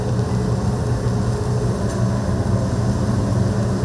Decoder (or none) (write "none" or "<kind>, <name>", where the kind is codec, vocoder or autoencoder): none